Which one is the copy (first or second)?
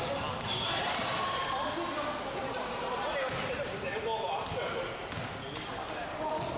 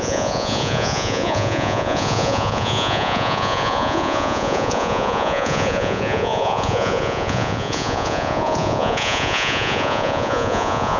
second